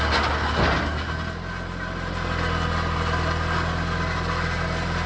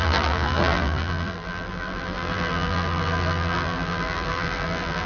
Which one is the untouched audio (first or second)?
first